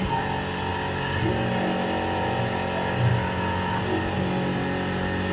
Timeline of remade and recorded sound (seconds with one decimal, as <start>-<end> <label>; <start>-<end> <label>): 0.0-3.1 recorded; 3.1-3.8 remade; 3.8-5.3 recorded